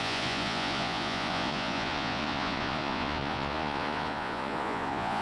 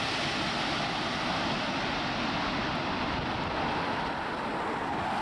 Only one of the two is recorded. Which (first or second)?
second